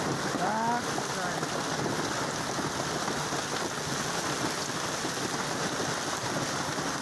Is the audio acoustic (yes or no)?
yes